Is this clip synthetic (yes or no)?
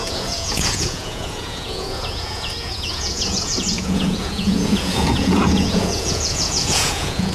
yes